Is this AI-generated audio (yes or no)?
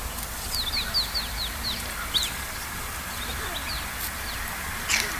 no